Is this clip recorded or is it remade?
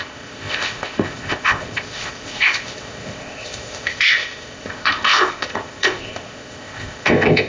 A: remade